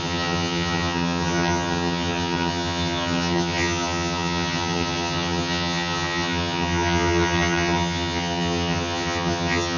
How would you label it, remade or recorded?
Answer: remade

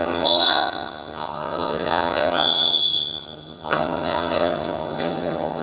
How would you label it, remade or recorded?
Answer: remade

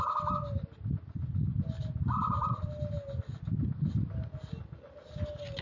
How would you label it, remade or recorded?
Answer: recorded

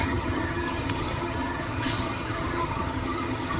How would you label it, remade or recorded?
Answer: remade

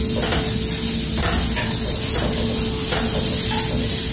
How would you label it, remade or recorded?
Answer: recorded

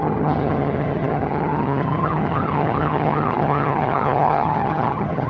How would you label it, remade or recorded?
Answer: remade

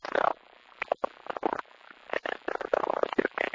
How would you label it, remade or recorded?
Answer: recorded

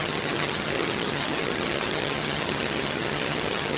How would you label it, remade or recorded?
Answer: remade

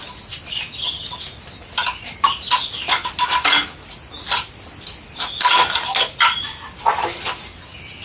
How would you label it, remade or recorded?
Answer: recorded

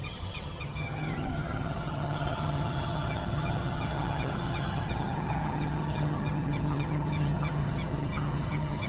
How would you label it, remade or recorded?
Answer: remade